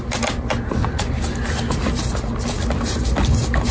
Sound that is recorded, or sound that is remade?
recorded